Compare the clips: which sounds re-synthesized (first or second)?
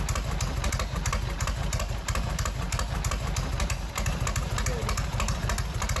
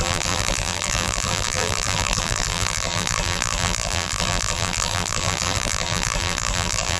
second